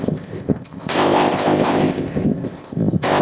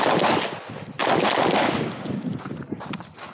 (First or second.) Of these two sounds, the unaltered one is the second